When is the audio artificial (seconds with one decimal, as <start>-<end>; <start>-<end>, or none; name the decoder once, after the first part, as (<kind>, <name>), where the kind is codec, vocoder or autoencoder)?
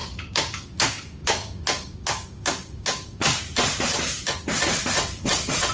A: 0.0-3.4 (codec, DAC)